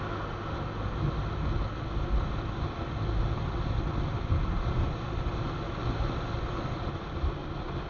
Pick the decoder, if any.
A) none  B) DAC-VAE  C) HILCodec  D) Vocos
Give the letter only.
A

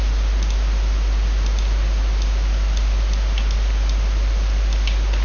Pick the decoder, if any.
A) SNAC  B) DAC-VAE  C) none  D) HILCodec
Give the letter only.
C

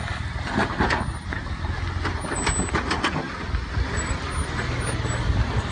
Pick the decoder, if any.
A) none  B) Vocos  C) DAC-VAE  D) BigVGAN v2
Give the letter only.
A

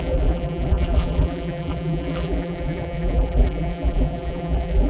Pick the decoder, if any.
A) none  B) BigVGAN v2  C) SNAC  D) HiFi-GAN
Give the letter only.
B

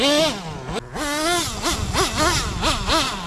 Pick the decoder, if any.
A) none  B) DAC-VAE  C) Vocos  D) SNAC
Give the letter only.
A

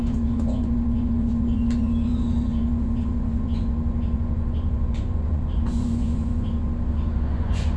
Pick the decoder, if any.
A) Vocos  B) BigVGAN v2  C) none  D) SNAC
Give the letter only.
A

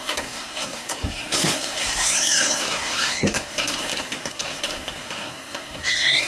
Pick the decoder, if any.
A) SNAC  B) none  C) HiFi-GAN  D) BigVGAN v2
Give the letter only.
A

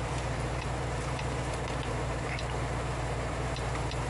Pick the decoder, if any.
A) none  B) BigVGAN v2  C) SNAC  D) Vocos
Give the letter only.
B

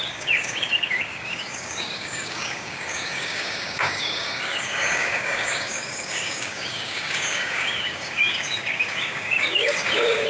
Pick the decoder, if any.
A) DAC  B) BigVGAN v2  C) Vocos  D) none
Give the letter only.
A